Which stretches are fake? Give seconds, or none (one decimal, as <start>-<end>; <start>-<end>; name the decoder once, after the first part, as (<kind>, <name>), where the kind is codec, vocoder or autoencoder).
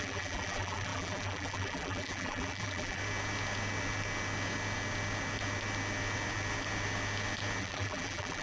0.0-3.0 (vocoder, BigVGAN v2); 7.6-8.4